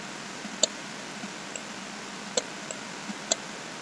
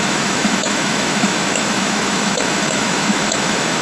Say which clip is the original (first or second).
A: first